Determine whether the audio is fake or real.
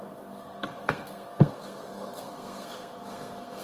fake